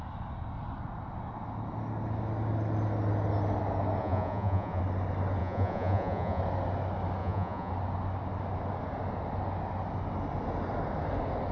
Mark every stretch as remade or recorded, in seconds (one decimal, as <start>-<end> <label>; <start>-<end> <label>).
0.0-4.0 recorded; 4.0-4.8 remade; 4.8-5.4 recorded; 5.4-6.4 remade; 6.4-7.2 recorded; 7.2-7.7 remade; 7.7-11.5 recorded